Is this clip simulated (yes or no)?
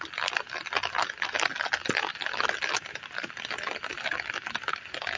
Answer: no